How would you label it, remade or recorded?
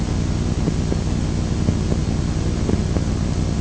recorded